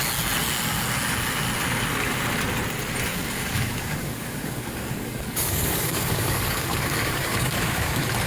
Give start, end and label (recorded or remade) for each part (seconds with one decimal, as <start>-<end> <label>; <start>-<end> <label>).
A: 0.0-3.1 recorded; 3.1-7.9 remade; 7.9-8.3 recorded